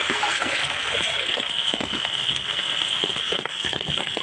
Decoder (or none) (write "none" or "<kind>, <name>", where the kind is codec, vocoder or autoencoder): codec, SNAC